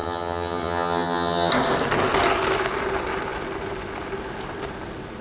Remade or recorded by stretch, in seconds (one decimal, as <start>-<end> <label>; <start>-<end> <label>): 0.0-1.5 remade; 1.5-5.2 recorded